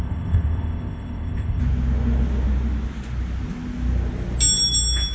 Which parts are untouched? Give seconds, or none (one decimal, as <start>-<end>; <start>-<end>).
1.6-5.1